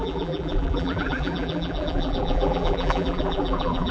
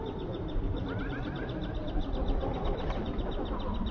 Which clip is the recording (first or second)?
second